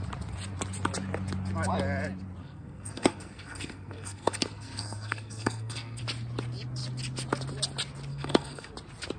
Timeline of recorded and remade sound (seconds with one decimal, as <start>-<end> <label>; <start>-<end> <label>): 0.0-2.4 recorded; 2.4-6.0 remade; 6.0-8.1 recorded; 8.1-8.7 remade; 8.7-9.2 recorded